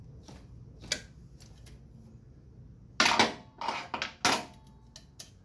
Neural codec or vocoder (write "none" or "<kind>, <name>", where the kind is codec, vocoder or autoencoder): none